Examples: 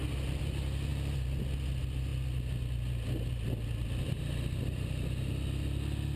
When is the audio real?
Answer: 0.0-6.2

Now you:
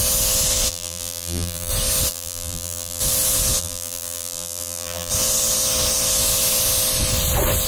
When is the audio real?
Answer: 0.0-0.7; 1.7-2.1; 3.0-3.6; 5.1-7.7